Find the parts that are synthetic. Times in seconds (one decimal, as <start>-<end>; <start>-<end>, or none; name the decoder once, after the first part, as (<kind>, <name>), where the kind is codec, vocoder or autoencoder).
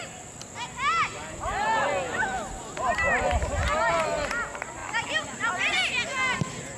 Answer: none